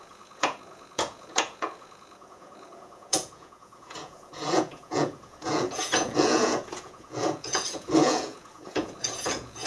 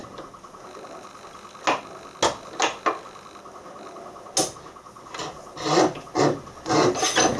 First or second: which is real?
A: second